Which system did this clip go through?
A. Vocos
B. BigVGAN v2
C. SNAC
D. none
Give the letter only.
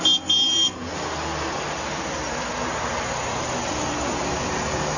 D